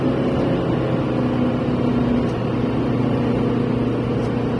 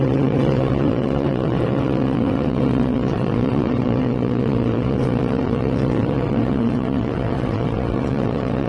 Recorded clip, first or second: first